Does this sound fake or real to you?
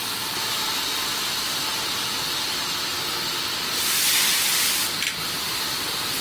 real